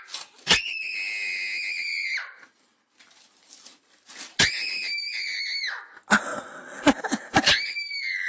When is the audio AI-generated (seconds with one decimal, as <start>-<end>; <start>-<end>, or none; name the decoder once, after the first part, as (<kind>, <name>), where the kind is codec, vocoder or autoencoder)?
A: 2.1-2.7 (vocoder, BigVGAN v2)